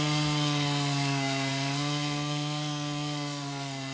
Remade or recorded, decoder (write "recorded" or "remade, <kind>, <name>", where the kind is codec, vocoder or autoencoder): remade, codec, SNAC